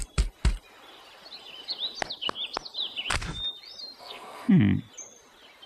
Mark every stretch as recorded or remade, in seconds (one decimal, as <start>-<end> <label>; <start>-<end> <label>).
0.0-4.0 recorded; 4.0-4.5 remade; 4.5-5.7 recorded